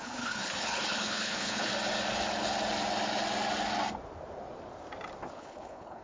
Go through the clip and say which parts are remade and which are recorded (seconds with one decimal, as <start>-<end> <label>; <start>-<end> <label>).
0.0-1.7 remade; 1.7-5.3 recorded; 5.3-6.0 remade